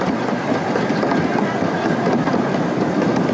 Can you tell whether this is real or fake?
real